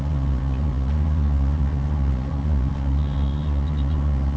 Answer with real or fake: fake